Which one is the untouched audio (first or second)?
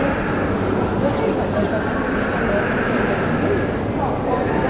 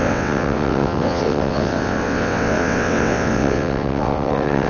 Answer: first